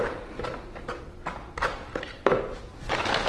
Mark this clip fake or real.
real